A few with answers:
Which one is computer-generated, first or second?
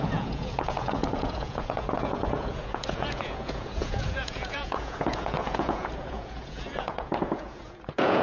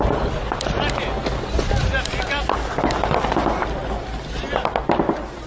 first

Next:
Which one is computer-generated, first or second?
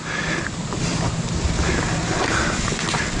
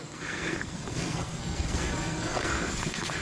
second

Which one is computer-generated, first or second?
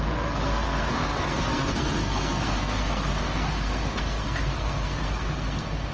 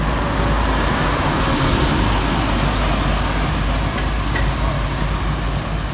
first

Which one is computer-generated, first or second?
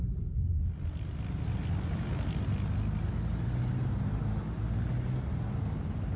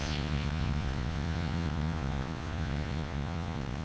second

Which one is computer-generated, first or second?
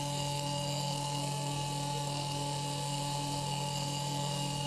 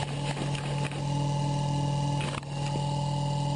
first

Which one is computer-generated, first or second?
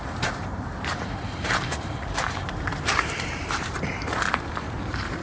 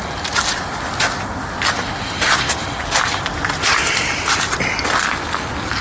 first